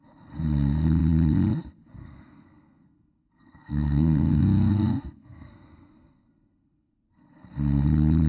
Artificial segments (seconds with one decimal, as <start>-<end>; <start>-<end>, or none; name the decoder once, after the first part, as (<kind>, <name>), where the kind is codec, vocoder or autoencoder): 2.0-7.0 (codec, SNAC)